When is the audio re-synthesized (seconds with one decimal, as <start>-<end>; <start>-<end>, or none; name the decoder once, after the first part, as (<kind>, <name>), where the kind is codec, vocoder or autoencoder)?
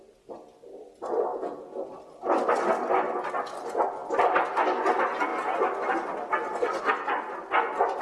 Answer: 1.3-1.9 (vocoder, Vocos)